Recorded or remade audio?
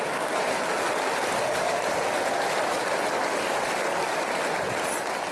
recorded